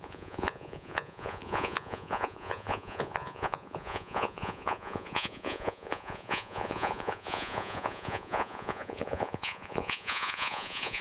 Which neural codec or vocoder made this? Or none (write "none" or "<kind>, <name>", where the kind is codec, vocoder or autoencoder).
vocoder, Vocos